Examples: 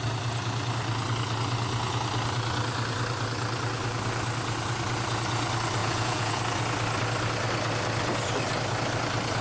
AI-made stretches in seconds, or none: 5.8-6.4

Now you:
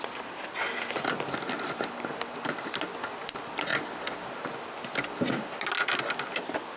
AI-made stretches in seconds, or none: none

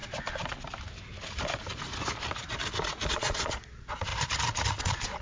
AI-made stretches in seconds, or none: 3.1-4.1; 4.8-5.2

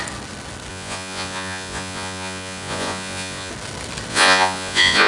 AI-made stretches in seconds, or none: 0.7-3.5; 4.1-5.1

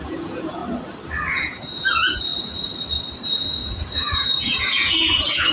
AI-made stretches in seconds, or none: 0.0-0.6; 1.3-2.3; 3.3-5.5

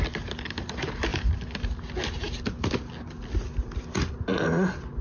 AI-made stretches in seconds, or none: none

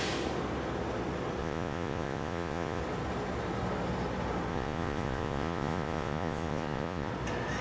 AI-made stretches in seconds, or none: 1.4-2.8; 4.5-7.1

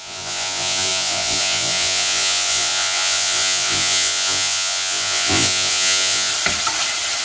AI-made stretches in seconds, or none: 0.0-6.3